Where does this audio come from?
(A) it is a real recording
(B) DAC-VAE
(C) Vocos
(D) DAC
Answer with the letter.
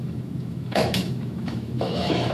B